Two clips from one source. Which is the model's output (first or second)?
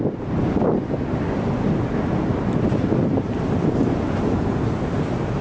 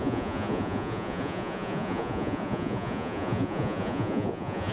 second